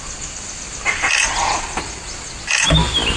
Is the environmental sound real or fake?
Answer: real